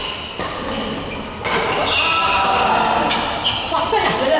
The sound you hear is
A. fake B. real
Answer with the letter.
B